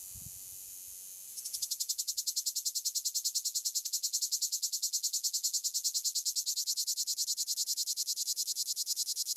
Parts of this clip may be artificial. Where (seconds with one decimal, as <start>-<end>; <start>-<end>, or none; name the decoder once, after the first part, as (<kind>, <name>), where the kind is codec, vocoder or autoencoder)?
none